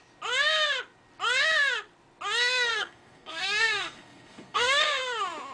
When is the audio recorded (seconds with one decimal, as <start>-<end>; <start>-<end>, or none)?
0.0-2.7; 5.0-5.5